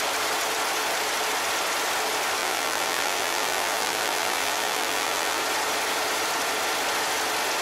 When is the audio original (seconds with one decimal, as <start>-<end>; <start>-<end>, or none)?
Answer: 0.0-2.4; 5.4-7.6